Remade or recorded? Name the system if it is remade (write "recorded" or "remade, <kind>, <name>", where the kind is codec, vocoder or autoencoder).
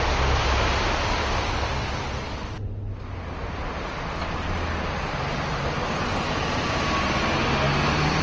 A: recorded